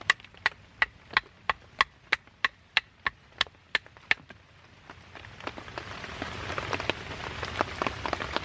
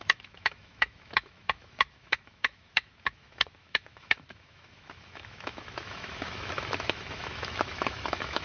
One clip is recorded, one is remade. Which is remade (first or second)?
second